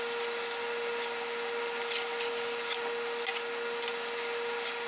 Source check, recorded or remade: recorded